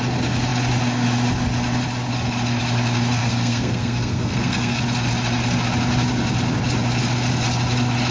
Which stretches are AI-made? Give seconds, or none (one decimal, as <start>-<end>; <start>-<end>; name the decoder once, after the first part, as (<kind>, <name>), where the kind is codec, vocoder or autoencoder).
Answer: 3.2-4.8 (codec, SNAC)